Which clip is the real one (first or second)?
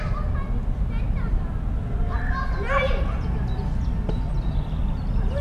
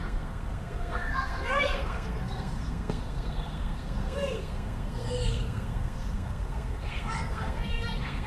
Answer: first